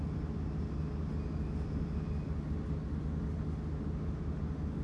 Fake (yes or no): no